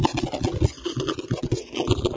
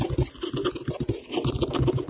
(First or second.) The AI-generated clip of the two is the first